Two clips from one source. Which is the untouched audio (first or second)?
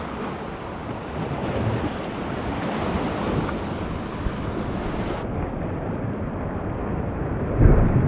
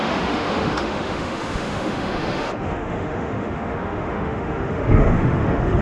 first